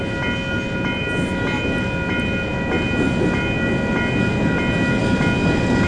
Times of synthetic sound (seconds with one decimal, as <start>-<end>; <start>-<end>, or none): none